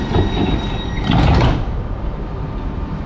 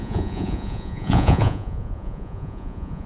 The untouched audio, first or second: first